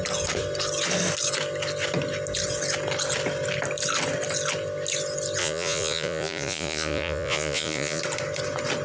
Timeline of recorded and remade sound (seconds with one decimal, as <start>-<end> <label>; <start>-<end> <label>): 0.0-5.4 recorded; 5.4-8.0 remade; 8.0-8.8 recorded